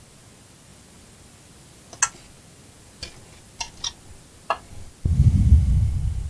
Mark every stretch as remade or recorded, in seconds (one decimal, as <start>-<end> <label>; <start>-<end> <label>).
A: 0.0-6.3 recorded